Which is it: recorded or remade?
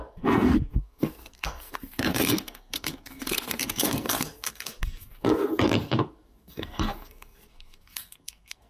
remade